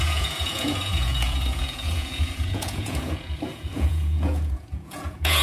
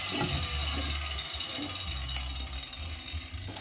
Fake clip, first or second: first